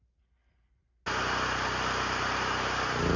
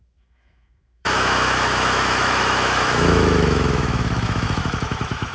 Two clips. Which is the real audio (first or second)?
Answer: first